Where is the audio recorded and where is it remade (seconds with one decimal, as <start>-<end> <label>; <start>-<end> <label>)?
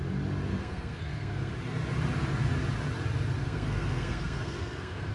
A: 0.0-0.5 recorded; 0.5-1.5 remade; 1.5-3.4 recorded; 3.4-5.1 remade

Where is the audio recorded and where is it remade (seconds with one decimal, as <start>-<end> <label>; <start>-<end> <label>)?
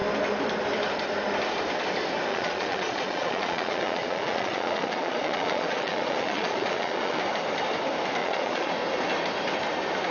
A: 0.0-2.3 recorded; 2.3-7.2 remade; 7.2-8.2 recorded; 8.2-8.7 remade; 8.7-10.1 recorded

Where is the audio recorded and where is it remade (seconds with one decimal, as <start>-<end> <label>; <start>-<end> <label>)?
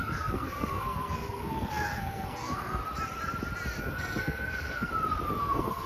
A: 0.0-2.8 remade; 2.8-3.8 recorded; 3.8-4.9 remade; 4.9-5.4 recorded; 5.4-5.9 remade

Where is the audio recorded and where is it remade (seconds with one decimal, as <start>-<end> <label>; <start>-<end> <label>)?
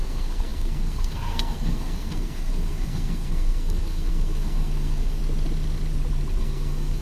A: 0.0-5.2 remade; 5.2-6.4 recorded; 6.4-7.0 remade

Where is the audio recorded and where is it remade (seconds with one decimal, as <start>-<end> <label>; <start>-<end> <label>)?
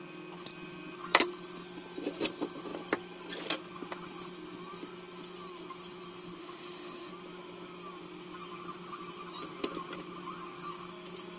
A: 0.0-6.4 recorded; 6.4-7.1 remade; 7.1-11.4 recorded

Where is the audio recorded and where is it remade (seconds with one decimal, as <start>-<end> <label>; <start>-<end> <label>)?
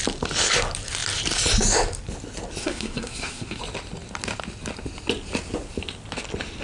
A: 0.0-2.6 recorded; 2.6-3.6 remade; 3.6-6.6 recorded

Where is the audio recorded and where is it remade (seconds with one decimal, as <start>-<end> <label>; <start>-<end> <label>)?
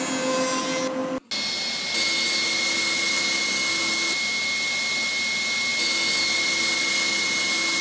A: 0.0-7.8 recorded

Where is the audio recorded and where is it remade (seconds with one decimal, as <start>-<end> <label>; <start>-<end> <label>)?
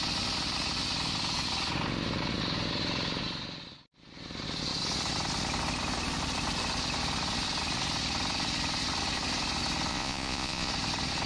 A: 0.0-9.9 recorded; 9.9-10.7 remade; 10.7-11.3 recorded